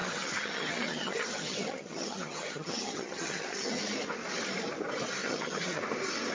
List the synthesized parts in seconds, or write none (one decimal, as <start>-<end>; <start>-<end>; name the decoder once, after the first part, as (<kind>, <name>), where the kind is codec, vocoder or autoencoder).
0.0-3.8 (vocoder, HiFi-GAN); 5.2-5.8